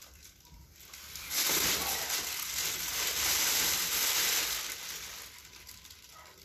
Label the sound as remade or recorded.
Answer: recorded